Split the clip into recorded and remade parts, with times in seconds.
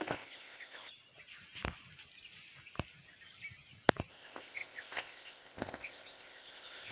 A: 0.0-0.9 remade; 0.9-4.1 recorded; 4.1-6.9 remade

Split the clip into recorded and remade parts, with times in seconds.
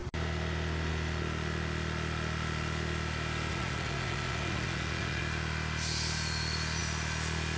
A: 0.0-3.5 recorded; 3.5-5.2 remade; 5.2-7.6 recorded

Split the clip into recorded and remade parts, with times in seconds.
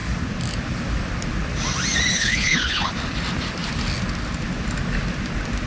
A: 0.0-2.1 recorded; 2.1-2.9 remade; 2.9-5.7 recorded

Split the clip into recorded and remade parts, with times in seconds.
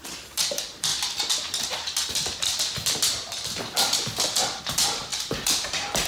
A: 0.0-0.9 remade; 0.9-4.6 recorded; 4.6-6.1 remade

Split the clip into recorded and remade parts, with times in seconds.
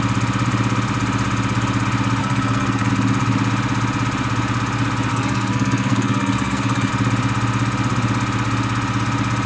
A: 0.0-2.2 recorded; 2.2-2.9 remade; 2.9-5.1 recorded; 5.1-6.9 remade; 6.9-9.5 recorded